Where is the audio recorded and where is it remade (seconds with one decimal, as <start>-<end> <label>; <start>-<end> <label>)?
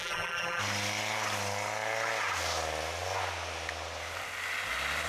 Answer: 0.0-0.6 remade; 0.6-5.1 recorded